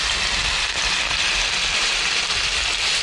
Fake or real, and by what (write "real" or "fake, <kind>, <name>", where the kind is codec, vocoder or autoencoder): real